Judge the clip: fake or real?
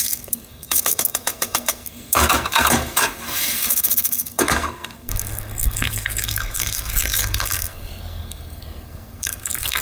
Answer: fake